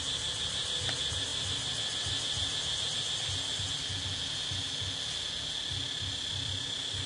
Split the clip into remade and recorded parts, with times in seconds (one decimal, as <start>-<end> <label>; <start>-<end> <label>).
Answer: 0.0-7.1 recorded